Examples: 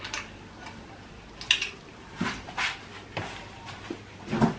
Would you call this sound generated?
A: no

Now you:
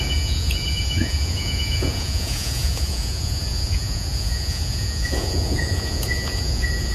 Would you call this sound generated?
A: yes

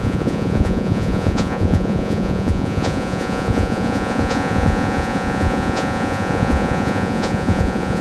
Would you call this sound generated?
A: yes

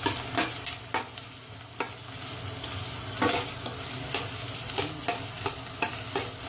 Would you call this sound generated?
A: no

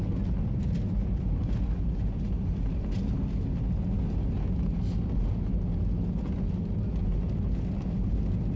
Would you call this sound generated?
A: no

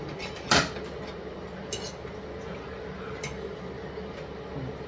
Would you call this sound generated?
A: no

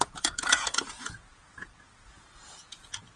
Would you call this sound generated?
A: yes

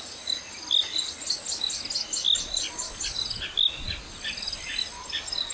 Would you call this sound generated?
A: no